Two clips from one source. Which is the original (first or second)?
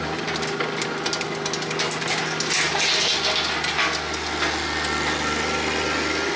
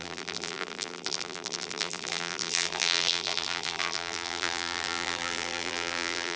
first